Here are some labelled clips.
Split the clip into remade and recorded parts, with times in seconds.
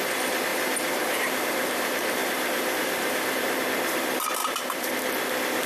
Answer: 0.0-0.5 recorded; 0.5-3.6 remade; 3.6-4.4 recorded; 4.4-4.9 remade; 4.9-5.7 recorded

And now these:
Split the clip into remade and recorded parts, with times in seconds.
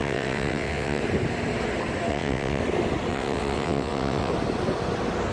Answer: 0.0-1.0 remade; 1.0-2.1 recorded; 2.1-2.6 remade; 2.6-3.1 recorded; 3.1-4.3 remade; 4.3-5.3 recorded